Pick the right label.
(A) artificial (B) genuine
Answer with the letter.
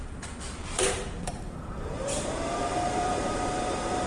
A